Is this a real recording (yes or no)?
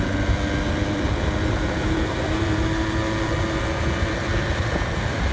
no